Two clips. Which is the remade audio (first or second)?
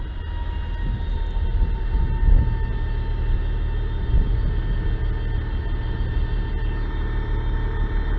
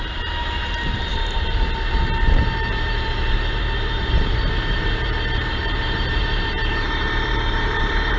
second